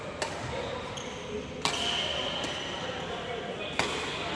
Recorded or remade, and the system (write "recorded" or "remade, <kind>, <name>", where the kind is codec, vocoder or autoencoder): recorded